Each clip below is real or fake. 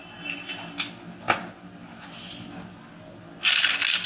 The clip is real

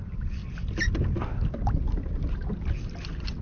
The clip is real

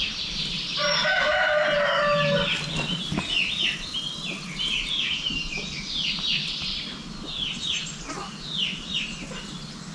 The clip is real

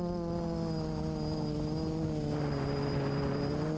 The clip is real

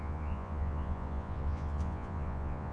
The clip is fake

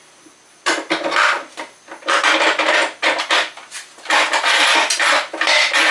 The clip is real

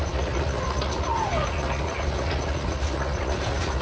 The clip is fake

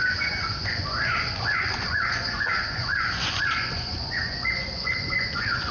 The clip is fake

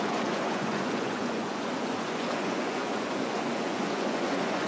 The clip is fake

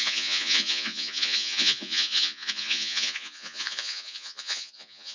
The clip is fake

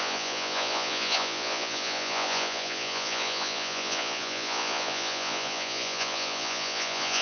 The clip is fake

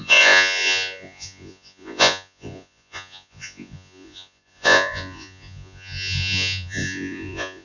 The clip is fake